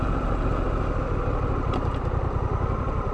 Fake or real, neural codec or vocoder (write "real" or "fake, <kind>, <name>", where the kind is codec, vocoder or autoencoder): fake, vocoder, BigVGAN v2